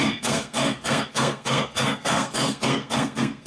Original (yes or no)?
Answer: no